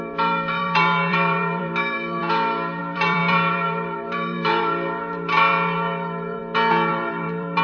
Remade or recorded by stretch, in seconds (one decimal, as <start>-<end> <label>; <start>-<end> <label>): 0.0-2.2 remade; 2.2-2.8 recorded; 2.8-6.4 remade; 6.4-6.9 recorded; 6.9-7.6 remade